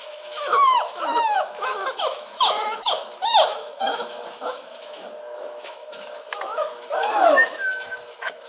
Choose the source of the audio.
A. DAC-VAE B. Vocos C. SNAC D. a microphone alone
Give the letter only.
A